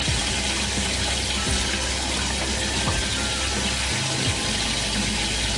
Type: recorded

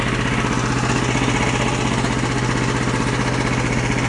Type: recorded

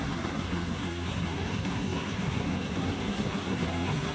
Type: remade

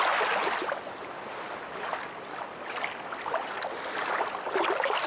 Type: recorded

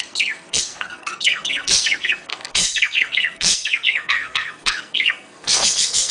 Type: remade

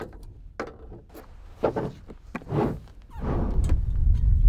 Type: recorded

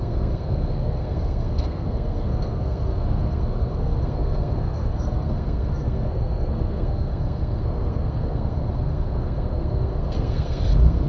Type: remade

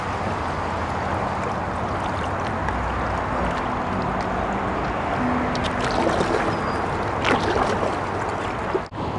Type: recorded